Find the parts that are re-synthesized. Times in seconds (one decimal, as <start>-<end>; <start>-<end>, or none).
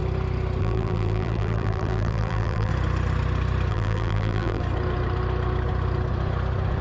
0.6-2.7; 3.7-4.6